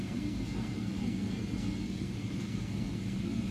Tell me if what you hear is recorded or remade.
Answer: remade